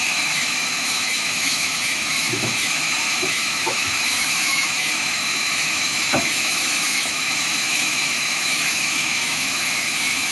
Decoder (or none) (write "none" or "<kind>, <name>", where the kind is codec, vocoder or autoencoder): autoencoder, DAC-VAE